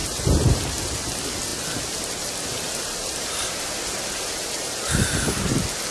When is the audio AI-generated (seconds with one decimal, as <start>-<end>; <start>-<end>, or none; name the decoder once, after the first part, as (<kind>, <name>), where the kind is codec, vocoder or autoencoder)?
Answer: 0.0-0.6 (vocoder, BigVGAN v2); 3.0-5.5